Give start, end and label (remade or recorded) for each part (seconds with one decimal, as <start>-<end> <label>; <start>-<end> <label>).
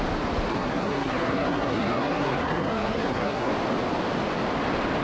0.0-0.5 recorded; 0.5-3.5 remade; 3.5-5.0 recorded